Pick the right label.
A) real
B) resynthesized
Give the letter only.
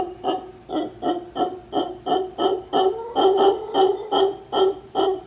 A